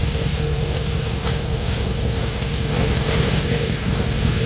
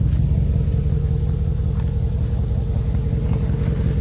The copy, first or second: first